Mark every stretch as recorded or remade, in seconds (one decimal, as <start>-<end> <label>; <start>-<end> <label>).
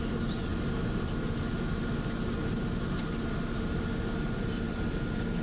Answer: 0.0-5.4 recorded